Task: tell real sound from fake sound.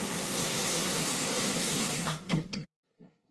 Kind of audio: fake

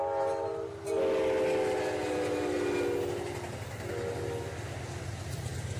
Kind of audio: real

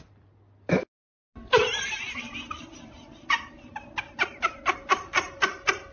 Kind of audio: real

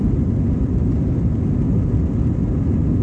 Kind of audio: real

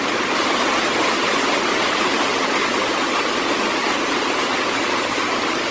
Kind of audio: real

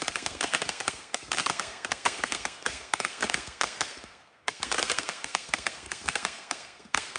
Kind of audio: fake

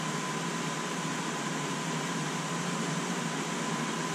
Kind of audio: real